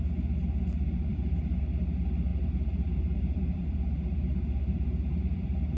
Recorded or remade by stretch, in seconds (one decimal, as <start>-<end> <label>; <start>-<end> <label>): 0.0-1.1 recorded; 1.1-1.6 remade; 1.6-2.3 recorded; 2.3-5.8 remade